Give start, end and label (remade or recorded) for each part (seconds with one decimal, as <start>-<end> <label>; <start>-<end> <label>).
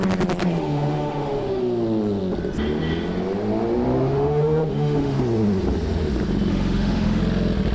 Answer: 0.0-0.4 recorded; 0.4-1.6 remade; 1.6-4.0 recorded; 4.0-5.2 remade; 5.2-6.5 recorded; 6.5-7.2 remade; 7.2-7.7 recorded